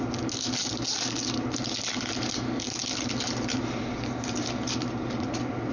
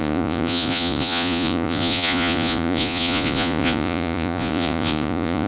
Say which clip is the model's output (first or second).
second